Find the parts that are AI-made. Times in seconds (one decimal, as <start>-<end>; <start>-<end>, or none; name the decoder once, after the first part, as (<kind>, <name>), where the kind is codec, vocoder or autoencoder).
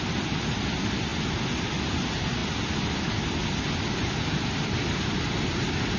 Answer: none